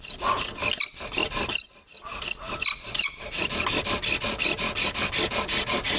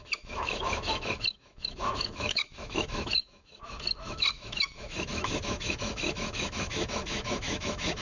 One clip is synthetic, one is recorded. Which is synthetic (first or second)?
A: second